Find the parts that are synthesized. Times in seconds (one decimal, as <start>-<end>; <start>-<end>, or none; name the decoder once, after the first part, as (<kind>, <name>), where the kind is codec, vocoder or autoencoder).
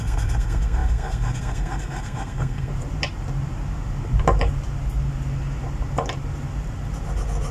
0.0-2.7 (codec, SNAC)